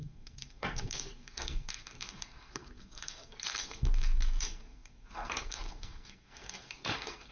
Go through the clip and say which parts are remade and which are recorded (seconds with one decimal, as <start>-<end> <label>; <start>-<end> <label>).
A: 0.0-7.3 remade